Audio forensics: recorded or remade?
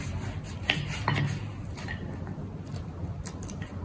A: recorded